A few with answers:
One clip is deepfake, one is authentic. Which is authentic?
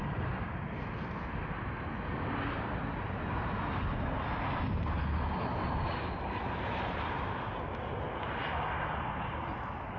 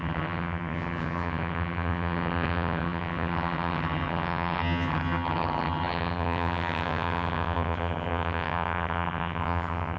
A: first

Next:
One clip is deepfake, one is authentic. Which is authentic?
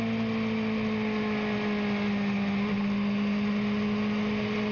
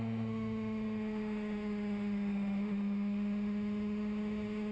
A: first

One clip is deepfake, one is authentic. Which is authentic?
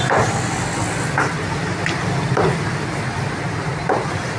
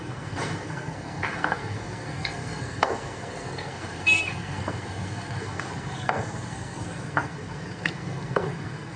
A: first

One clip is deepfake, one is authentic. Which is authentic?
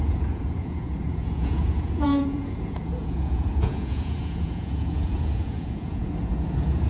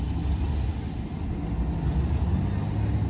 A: second